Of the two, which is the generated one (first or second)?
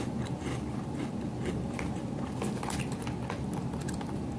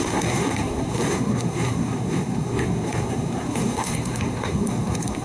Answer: second